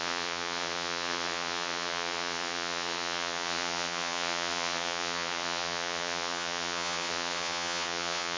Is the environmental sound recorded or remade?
remade